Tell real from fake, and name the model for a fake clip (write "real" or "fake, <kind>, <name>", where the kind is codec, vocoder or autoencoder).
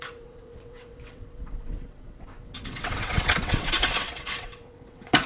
fake, vocoder, WaveNeXt